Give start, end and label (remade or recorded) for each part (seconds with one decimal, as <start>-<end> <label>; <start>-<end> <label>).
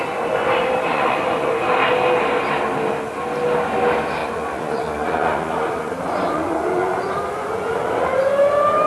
0.0-0.9 recorded; 0.9-1.5 remade; 1.5-4.2 recorded; 4.2-8.3 remade; 8.3-8.9 recorded